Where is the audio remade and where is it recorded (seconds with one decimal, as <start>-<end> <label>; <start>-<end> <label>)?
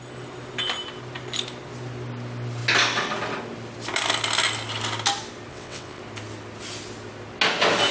0.0-5.5 recorded; 5.5-6.0 remade; 6.0-7.9 recorded